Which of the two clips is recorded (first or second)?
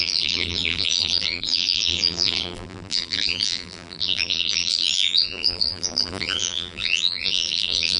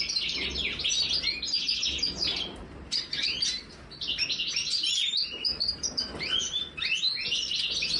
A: second